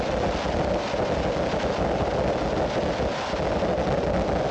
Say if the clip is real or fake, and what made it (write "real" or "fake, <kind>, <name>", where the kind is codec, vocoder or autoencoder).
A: real